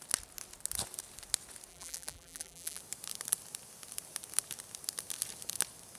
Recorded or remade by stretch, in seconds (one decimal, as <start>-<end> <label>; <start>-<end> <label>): 0.0-1.7 recorded; 1.7-2.8 remade; 2.8-6.0 recorded